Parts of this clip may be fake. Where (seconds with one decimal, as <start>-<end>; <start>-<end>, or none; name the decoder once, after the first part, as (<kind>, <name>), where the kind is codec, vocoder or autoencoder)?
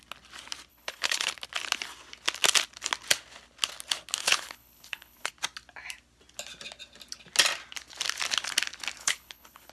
0.7-1.3 (codec, HILCodec); 4.2-5.3; 9.0-9.7